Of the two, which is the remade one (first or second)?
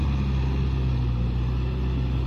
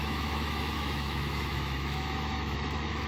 second